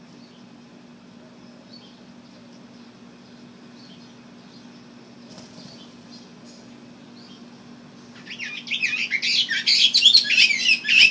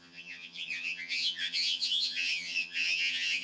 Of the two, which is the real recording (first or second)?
first